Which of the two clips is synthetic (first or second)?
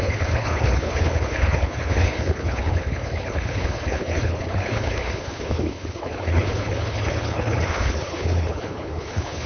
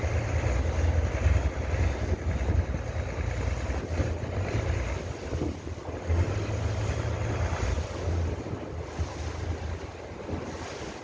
first